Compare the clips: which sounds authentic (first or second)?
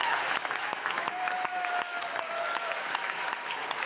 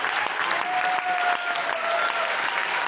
second